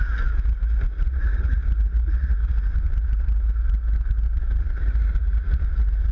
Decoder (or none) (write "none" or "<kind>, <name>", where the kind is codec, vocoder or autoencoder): none